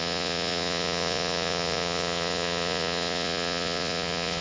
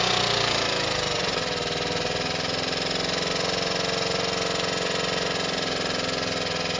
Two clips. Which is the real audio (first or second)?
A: second